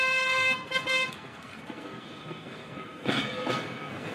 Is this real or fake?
fake